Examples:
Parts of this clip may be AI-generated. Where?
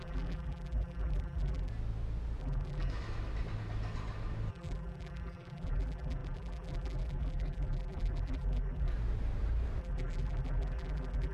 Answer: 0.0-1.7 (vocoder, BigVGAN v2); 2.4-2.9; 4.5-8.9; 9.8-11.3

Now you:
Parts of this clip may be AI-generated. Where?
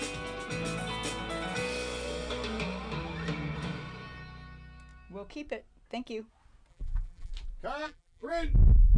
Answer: 6.7-7.3 (vocoder, BigVGAN v2); 7.8-8.3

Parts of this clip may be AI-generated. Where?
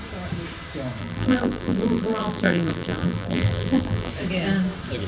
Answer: 1.0-4.1 (vocoder, BigVGAN v2)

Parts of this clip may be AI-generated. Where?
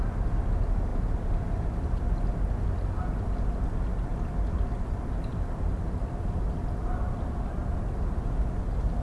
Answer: 6.8-7.6 (vocoder, BigVGAN v2)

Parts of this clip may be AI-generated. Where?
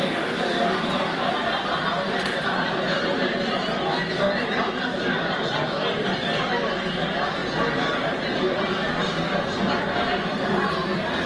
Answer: 0.0-7.4 (vocoder, BigVGAN v2); 8.4-11.3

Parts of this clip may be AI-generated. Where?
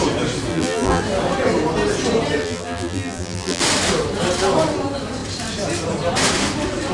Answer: 0.5-1.0 (vocoder, BigVGAN v2); 2.4-3.6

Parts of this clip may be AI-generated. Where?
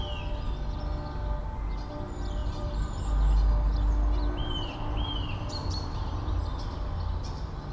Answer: 2.4-3.0 (vocoder, BigVGAN v2); 4.4-6.3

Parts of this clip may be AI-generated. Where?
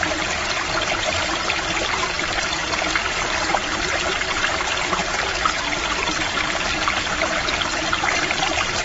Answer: 0.0-2.6 (vocoder, BigVGAN v2); 3.5-8.8